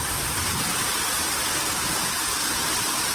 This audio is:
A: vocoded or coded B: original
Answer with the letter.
B